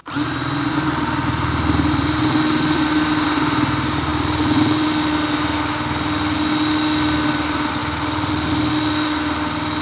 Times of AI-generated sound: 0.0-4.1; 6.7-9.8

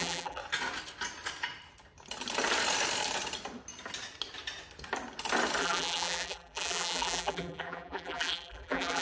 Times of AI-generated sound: 0.0-0.4; 5.6-9.0